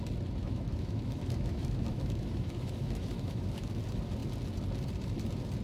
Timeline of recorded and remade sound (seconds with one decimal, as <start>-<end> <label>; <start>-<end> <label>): 0.0-0.4 recorded; 0.4-3.8 remade; 3.8-5.6 recorded

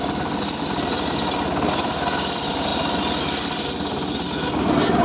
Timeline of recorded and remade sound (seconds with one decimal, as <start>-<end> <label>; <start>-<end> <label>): 0.0-5.0 recorded

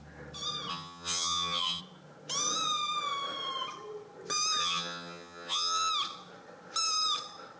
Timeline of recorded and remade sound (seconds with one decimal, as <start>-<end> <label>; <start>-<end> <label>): 0.0-0.7 recorded; 0.7-1.8 remade; 1.8-4.6 recorded; 4.6-5.9 remade; 5.9-7.6 recorded

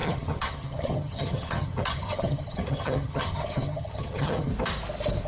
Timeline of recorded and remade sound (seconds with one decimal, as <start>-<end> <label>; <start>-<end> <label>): 0.0-4.5 remade; 4.5-5.3 recorded